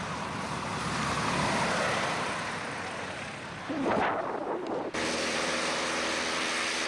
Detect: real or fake real